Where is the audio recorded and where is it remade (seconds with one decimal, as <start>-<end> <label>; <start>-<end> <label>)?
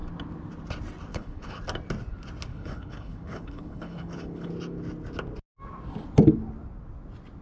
0.0-1.1 recorded; 1.1-1.6 remade; 1.6-2.5 recorded; 2.5-4.5 remade; 4.5-7.4 recorded